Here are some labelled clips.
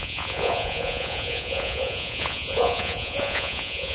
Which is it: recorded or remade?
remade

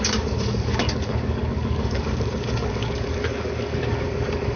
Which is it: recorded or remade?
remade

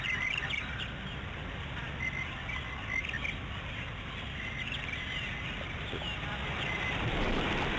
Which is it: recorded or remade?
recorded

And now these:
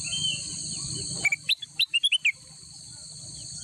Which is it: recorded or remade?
remade